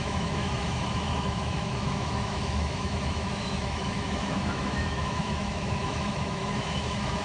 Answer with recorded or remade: remade